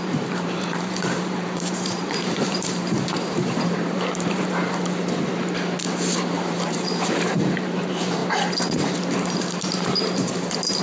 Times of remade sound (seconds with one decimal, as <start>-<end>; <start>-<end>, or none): 0.0-4.6; 6.3-8.2; 9.6-10.8